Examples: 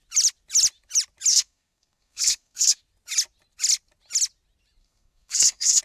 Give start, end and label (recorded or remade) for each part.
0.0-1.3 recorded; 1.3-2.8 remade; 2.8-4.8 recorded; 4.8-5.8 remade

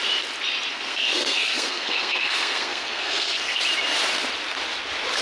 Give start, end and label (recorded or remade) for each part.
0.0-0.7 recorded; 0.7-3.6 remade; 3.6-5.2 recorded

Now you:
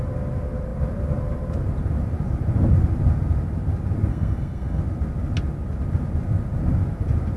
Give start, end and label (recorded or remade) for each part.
0.0-4.1 recorded; 4.1-4.8 remade; 4.8-7.4 recorded

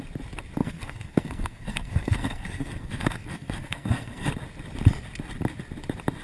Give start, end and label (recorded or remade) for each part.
0.0-0.6 recorded; 0.6-4.3 remade; 4.3-6.2 recorded

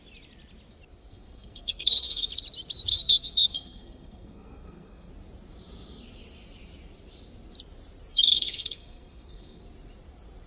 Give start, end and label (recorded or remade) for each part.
0.0-1.1 recorded; 1.1-2.3 remade; 2.3-2.9 recorded; 2.9-5.1 remade; 5.1-8.1 recorded; 8.1-9.6 remade; 9.6-10.5 recorded

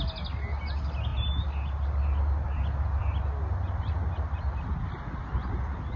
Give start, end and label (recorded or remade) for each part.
0.0-6.0 recorded

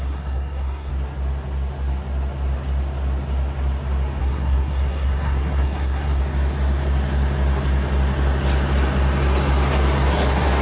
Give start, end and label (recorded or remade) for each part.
0.0-0.9 remade; 0.9-4.2 recorded; 4.2-6.2 remade; 6.2-10.1 recorded; 10.1-10.6 remade